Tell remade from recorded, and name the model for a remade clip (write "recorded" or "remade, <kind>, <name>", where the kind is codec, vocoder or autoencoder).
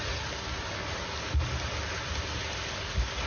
recorded